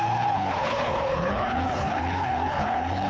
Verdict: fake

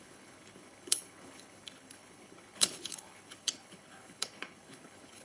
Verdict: fake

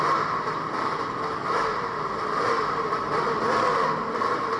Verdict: real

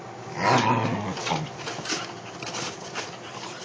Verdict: real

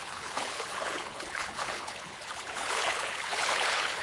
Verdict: fake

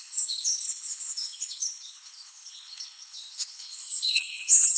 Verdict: fake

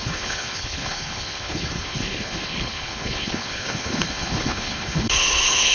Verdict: fake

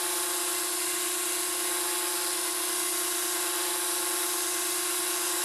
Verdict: real